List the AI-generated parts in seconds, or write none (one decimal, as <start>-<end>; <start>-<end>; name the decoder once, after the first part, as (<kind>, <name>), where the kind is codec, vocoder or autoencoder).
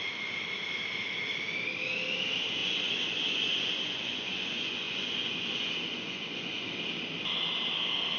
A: 2.6-6.8 (vocoder, Vocos)